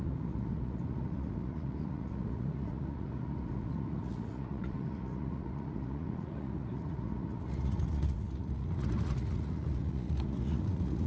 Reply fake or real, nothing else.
fake